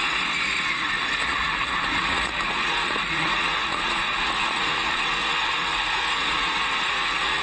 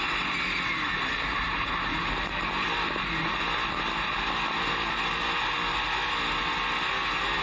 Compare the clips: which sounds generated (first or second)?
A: first